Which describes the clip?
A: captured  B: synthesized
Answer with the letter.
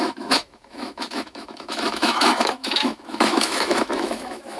B